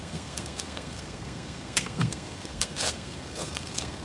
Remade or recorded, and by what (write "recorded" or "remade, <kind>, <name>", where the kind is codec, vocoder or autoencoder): remade, codec, SNAC